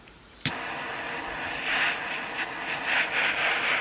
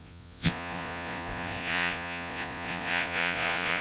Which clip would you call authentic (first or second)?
first